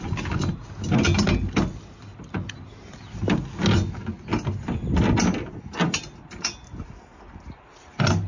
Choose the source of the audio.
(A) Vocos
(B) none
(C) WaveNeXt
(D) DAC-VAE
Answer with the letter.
B